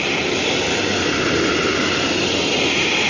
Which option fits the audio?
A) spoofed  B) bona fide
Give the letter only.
B